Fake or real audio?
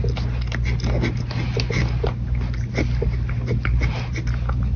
real